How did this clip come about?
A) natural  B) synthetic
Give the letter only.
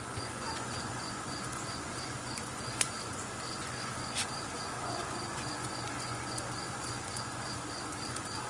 B